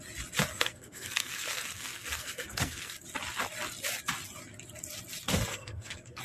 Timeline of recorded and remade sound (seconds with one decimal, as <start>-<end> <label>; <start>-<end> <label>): 0.0-0.5 recorded; 0.5-2.9 remade; 2.9-5.5 recorded; 5.5-6.2 remade